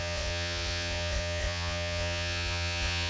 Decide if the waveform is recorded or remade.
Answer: remade